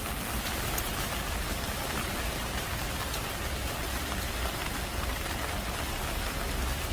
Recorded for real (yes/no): yes